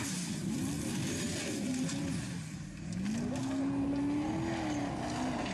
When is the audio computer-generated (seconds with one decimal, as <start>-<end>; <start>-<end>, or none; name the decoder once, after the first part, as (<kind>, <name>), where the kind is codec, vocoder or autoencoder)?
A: none